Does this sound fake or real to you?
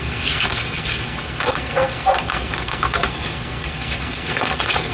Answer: fake